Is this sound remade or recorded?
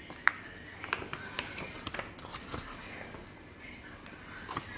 recorded